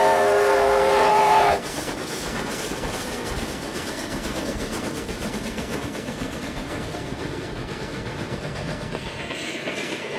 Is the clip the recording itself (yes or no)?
no